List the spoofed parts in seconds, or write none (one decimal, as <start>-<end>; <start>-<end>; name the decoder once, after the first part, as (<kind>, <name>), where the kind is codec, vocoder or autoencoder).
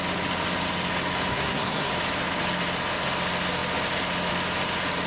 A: 1.3-1.9 (codec, SNAC)